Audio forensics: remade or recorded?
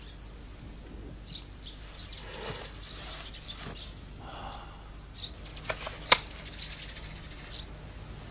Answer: recorded